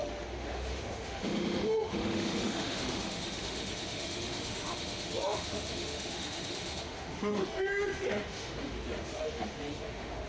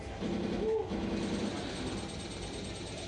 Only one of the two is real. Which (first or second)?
second